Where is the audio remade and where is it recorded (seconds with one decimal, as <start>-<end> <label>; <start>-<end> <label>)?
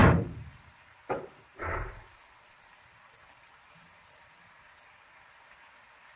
0.0-6.2 recorded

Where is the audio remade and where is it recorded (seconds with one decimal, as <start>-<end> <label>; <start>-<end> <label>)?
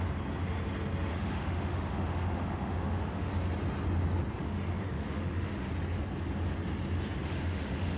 0.0-1.1 recorded; 1.1-3.3 remade; 3.3-4.4 recorded; 4.4-5.7 remade; 5.7-7.2 recorded; 7.2-8.0 remade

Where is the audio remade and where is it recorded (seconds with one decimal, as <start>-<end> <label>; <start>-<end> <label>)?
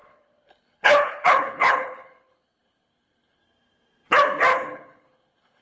0.0-3.4 remade; 3.4-4.5 recorded; 4.5-5.6 remade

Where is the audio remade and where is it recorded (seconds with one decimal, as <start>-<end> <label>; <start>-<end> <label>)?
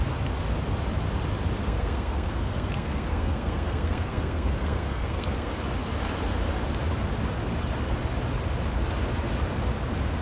0.0-1.6 recorded; 1.6-5.5 remade; 5.5-10.2 recorded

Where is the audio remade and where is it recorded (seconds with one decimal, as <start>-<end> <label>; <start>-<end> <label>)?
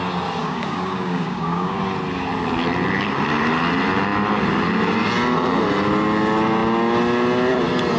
0.0-0.4 recorded; 0.4-1.8 remade; 1.8-8.0 recorded